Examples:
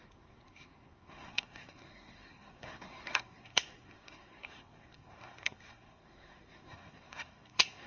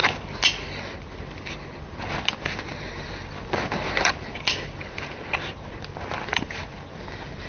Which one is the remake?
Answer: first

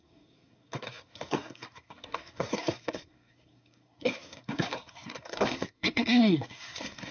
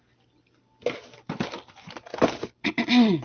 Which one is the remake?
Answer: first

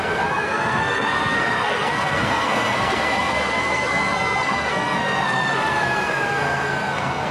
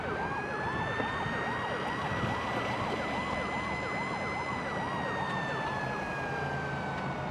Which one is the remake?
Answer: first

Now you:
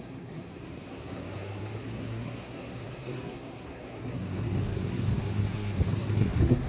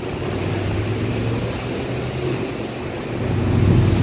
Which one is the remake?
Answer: first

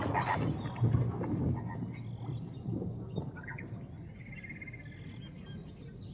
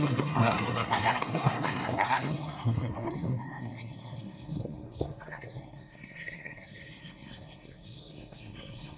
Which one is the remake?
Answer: second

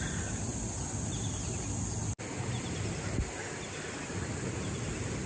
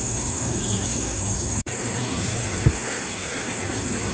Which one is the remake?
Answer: second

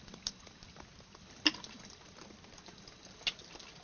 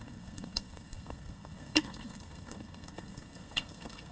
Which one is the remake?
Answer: second